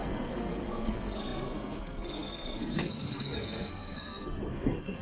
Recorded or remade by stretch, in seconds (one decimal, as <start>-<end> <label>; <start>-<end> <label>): 0.0-5.0 remade